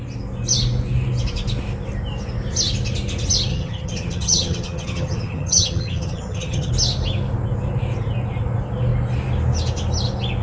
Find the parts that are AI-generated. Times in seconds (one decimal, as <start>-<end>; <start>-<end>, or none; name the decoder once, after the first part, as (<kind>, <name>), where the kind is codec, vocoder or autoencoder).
3.5-6.7 (vocoder, HiFi-GAN)